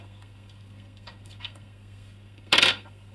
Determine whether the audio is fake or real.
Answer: fake